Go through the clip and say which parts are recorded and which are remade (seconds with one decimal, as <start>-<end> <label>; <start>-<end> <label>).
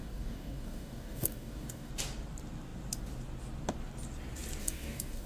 0.0-1.9 remade; 1.9-4.6 recorded; 4.6-5.3 remade